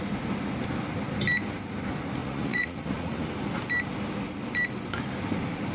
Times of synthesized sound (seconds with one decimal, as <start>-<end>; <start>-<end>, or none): 2.2-3.3